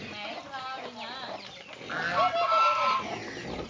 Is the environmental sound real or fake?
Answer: real